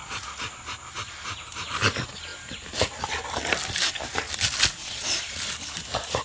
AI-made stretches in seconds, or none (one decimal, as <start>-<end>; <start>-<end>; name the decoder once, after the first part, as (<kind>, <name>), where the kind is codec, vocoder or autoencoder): 0.0-0.6 (vocoder, Vocos); 4.8-5.4